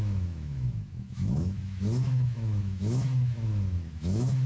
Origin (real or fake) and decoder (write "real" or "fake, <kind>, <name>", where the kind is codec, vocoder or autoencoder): fake, autoencoder, DAC-VAE